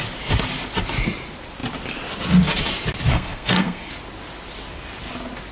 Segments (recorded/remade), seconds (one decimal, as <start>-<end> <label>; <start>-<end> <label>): 0.0-3.1 recorded; 3.1-3.9 remade; 3.9-5.5 recorded